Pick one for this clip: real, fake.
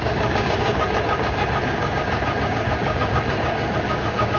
fake